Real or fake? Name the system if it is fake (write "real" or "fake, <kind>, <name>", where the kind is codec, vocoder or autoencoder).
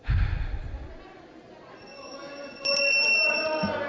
real